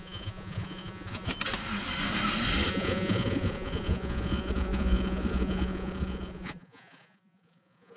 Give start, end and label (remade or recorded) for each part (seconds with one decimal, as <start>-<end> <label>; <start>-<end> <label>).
0.0-1.3 remade; 1.3-2.7 recorded; 2.7-8.0 remade